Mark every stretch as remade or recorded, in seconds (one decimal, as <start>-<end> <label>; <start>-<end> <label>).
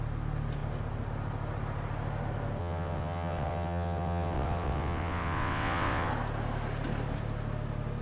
0.0-2.6 recorded; 2.6-6.1 remade; 6.1-8.0 recorded